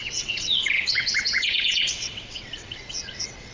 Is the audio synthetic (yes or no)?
yes